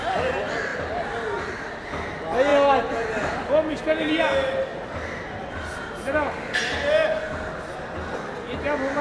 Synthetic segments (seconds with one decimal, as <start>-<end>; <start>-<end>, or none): none